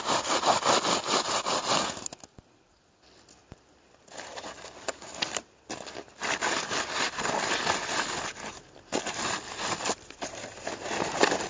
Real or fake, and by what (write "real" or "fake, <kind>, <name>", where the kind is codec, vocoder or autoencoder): real